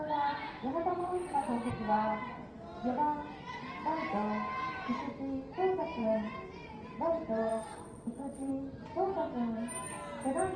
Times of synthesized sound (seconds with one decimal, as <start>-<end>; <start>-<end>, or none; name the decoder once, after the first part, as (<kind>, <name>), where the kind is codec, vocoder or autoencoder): 1.0-1.7 (vocoder, WaveNeXt); 7.5-8.5